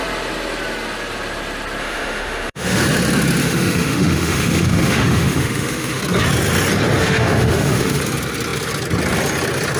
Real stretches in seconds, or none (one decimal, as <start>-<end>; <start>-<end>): 0.0-1.8; 2.8-3.4; 6.0-7.0; 8.0-9.8